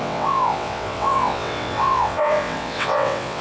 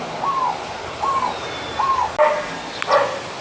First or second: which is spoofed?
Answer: first